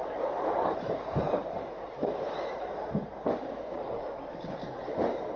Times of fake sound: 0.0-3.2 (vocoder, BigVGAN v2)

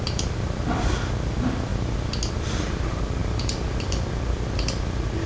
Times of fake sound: 0.0-1.7 (vocoder, BigVGAN v2); 2.3-5.3

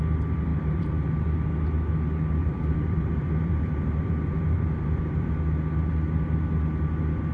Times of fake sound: 0.5-1.1 (vocoder, BigVGAN v2); 2.4-5.3

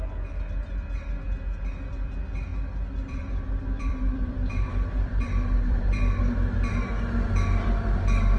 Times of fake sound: 2.5-6.2 (vocoder, BigVGAN v2)

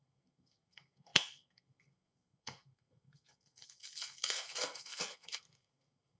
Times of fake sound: 0.0-6.2 (codec, SNAC)

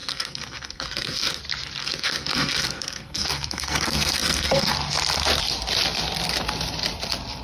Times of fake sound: 0.0-1.4 (codec, SNAC); 1.8-4.7

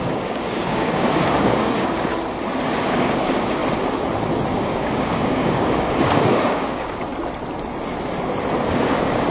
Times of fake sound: 0.0-2.1 (codec, DAC); 2.8-3.6; 4.5-7.1; 8.7-9.3